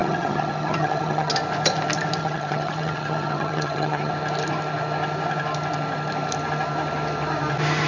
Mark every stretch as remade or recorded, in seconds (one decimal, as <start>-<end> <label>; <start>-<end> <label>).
0.0-1.3 remade; 1.3-2.2 recorded; 2.2-4.1 remade; 4.1-7.9 recorded